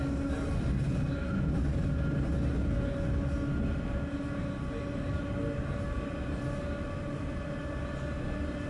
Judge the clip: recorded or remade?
recorded